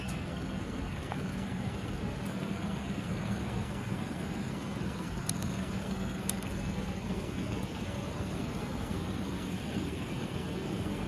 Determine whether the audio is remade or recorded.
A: remade